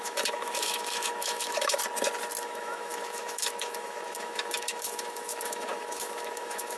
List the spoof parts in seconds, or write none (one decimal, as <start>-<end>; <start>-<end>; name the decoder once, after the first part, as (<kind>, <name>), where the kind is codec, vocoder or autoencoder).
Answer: 0.0-1.8 (autoencoder, DAC-VAE); 2.4-6.8